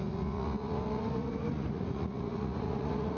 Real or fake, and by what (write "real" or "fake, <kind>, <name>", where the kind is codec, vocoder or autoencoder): fake, vocoder, Vocos